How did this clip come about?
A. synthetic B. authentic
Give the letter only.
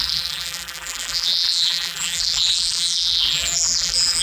A